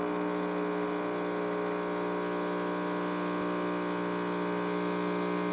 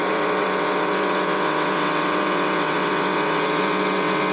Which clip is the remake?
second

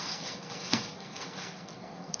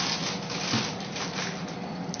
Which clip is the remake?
first